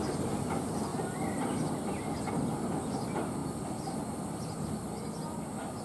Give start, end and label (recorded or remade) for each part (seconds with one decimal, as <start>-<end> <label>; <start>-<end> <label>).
0.0-0.9 recorded; 0.9-2.0 remade; 2.0-3.4 recorded; 3.4-4.2 remade; 4.2-5.8 recorded